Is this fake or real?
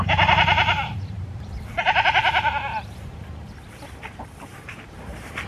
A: fake